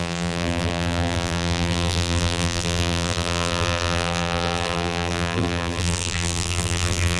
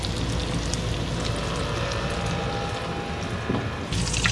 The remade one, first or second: first